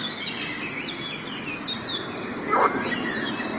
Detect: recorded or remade recorded